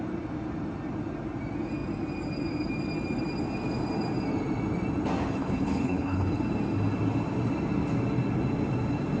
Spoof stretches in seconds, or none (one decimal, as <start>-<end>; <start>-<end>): 5.3-6.4